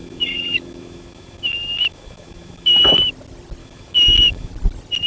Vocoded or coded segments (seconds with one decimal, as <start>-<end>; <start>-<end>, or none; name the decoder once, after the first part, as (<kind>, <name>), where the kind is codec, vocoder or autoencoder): 0.0-3.1 (autoencoder, DAC-VAE); 3.6-4.5